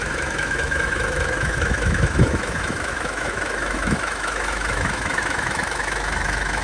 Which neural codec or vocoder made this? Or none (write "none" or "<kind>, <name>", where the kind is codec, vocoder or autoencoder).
autoencoder, DAC-VAE